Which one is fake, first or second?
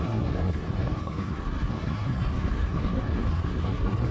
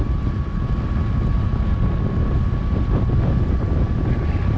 first